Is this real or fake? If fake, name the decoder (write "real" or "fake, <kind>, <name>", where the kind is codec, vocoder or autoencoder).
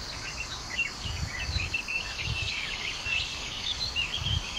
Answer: fake, codec, DAC